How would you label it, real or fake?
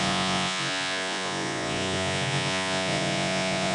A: fake